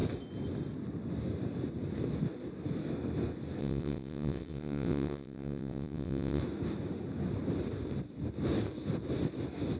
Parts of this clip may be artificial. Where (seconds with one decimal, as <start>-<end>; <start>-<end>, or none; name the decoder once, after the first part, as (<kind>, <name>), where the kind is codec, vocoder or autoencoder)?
3.6-6.4 (vocoder, WaveNeXt)